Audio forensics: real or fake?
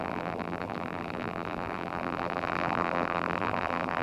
fake